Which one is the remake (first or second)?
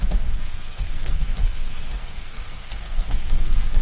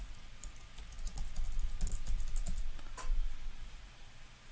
first